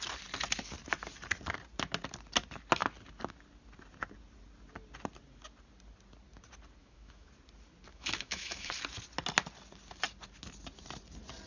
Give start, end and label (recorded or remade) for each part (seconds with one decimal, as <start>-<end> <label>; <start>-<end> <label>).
0.0-6.8 recorded; 6.8-7.3 remade; 7.3-7.9 recorded; 7.9-8.7 remade; 8.7-11.5 recorded